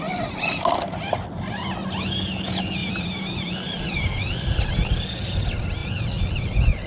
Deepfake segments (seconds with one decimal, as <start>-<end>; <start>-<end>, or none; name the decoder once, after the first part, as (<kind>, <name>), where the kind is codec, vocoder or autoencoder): 2.8-4.7 (vocoder, BigVGAN v2); 5.8-6.9